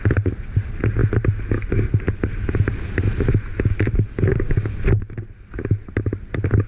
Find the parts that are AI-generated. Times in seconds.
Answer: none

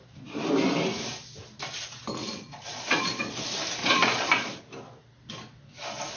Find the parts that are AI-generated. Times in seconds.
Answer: 2.2-3.4; 3.8-4.6

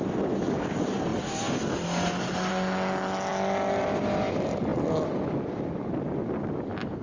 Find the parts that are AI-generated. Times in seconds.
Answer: none

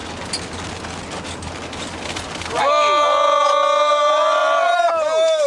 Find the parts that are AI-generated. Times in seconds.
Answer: none